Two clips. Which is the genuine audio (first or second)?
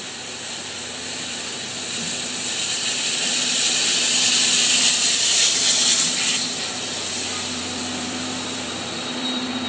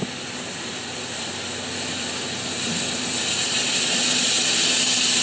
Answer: second